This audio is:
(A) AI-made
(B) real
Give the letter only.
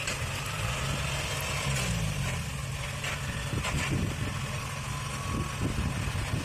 B